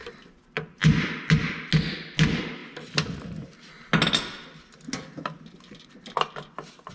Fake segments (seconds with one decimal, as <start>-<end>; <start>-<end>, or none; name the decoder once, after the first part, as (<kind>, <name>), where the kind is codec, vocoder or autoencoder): none